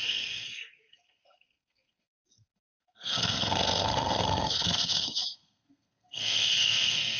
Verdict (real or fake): fake